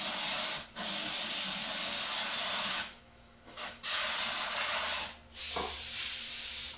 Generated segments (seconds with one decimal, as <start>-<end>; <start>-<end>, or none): 2.5-4.0